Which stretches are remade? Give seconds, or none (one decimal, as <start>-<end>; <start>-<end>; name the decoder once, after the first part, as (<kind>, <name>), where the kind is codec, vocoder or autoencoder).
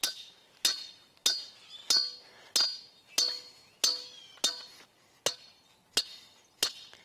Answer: none